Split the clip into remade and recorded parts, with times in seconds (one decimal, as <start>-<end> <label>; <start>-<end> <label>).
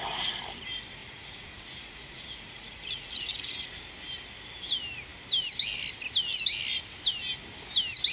0.0-1.0 recorded; 1.0-3.5 remade; 3.5-8.1 recorded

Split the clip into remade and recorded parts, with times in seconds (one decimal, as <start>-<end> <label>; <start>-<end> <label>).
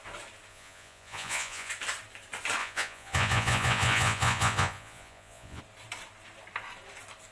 0.0-0.5 recorded; 0.5-1.7 remade; 1.7-2.6 recorded; 2.6-5.6 remade; 5.6-7.3 recorded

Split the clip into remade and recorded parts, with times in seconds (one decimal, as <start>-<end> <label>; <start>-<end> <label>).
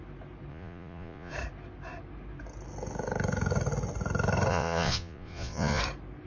0.0-0.5 recorded; 0.5-1.3 remade; 1.3-4.5 recorded; 4.5-5.8 remade; 5.8-6.3 recorded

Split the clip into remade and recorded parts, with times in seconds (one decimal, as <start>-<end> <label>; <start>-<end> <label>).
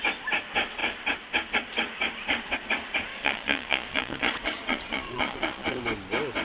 0.0-3.1 recorded; 3.1-5.8 remade; 5.8-6.4 recorded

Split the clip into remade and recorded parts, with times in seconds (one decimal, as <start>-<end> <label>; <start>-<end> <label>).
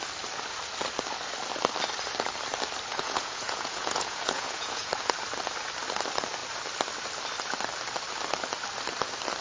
0.0-2.9 recorded; 2.9-4.9 remade; 4.9-9.4 recorded